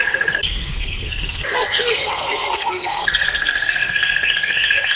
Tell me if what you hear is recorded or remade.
remade